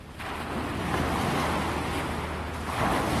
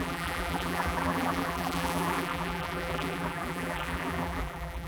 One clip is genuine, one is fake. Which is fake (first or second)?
second